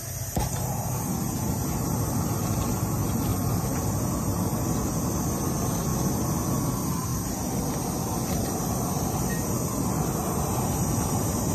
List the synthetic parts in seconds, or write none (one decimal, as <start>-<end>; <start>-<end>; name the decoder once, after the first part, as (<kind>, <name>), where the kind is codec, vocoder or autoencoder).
7.1-9.3 (vocoder, BigVGAN v2)